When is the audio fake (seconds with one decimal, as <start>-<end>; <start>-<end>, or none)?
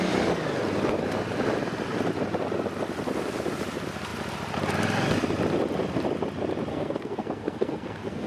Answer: 6.7-8.3